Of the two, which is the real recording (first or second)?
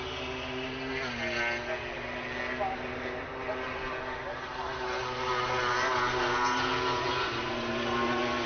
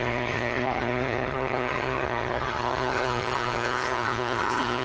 first